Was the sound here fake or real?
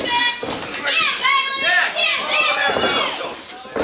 real